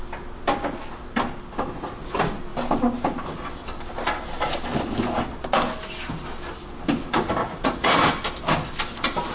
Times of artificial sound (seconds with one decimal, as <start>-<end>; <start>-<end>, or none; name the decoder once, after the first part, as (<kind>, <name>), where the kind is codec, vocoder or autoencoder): 7.4-7.9 (vocoder, Vocos)